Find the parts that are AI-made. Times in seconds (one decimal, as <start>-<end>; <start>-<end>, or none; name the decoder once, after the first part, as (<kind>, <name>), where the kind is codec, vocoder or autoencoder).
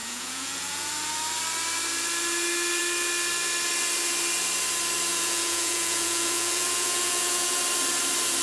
0.0-0.9 (vocoder, Vocos); 5.1-7.6